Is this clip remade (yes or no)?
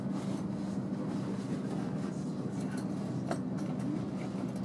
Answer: no